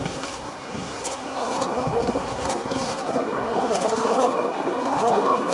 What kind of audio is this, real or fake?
fake